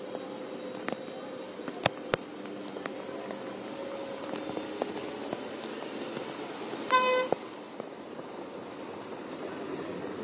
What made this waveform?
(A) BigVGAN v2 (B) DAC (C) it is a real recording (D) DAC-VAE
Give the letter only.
C